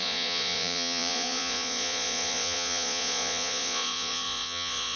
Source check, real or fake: fake